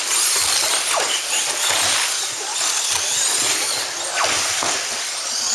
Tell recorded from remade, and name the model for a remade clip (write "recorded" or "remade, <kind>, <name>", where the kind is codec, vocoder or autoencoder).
recorded